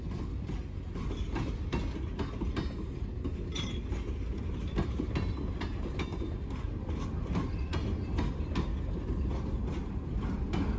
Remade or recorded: recorded